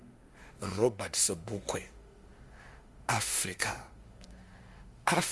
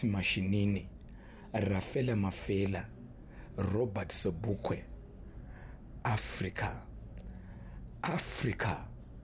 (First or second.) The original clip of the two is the second